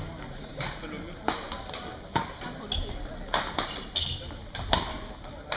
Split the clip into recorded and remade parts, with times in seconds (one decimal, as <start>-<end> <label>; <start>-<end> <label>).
0.0-5.6 recorded